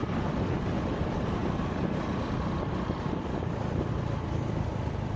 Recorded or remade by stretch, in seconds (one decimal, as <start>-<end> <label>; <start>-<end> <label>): 0.0-5.2 recorded